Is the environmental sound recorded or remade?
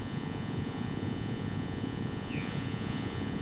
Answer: remade